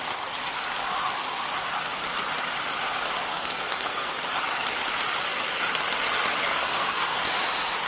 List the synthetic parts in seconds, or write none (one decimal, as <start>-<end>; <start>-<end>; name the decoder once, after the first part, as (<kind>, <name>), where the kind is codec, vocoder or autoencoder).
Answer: 3.3-4.1 (codec, SNAC); 6.5-7.2

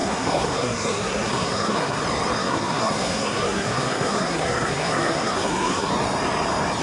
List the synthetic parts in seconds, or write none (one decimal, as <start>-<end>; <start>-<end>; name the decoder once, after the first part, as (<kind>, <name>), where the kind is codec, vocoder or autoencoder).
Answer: 0.0-2.0 (codec, SNAC); 2.4-5.9

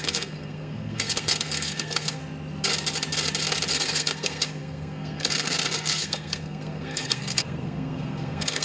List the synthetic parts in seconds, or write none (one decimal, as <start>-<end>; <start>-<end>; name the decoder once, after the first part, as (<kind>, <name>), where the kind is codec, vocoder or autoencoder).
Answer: 0.0-2.2 (codec, SNAC); 3.7-8.6